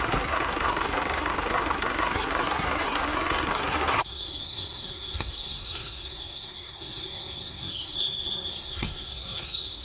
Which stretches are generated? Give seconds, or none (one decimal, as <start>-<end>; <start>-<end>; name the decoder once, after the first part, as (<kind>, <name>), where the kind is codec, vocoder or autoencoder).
0.0-9.8 (codec, SNAC)